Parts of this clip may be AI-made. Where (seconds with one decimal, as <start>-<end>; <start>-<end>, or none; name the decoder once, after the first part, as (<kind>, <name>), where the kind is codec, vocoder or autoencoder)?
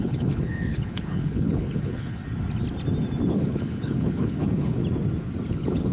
0.0-2.2 (codec, HILCodec); 3.3-4.8; 5.5-5.9